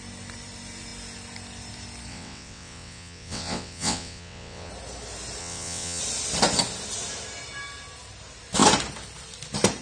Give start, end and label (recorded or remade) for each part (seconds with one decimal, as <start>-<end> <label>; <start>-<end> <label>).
0.0-2.1 recorded; 2.1-4.7 remade; 4.7-5.4 recorded; 5.4-6.0 remade; 6.0-9.8 recorded